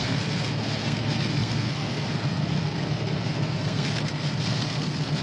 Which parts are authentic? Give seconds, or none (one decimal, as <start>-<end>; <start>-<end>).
none